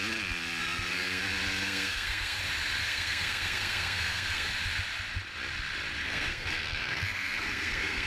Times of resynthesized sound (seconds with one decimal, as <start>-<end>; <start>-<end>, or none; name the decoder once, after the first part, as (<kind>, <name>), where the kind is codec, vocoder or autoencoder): 0.6-1.2 (codec, SNAC); 1.6-2.4; 2.8-4.5; 6.0-8.1